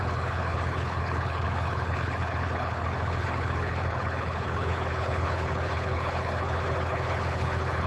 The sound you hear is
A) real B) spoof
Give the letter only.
B